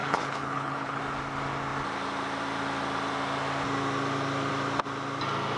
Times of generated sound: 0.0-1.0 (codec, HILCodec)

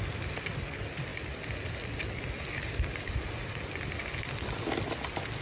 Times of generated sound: none